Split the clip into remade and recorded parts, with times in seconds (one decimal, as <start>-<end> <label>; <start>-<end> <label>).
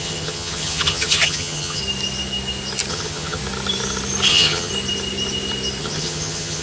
0.0-1.8 remade; 1.8-2.9 recorded; 2.9-3.4 remade; 3.4-4.3 recorded; 4.3-4.7 remade; 4.7-5.8 recorded; 5.8-6.6 remade